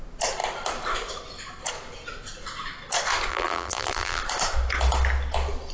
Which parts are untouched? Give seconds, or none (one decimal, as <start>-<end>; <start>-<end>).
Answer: 0.0-3.3; 4.2-5.7